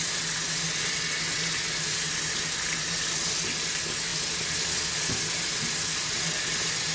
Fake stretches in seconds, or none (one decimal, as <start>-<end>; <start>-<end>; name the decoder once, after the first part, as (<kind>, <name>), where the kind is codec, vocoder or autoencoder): none